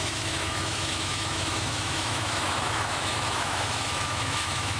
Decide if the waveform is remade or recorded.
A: remade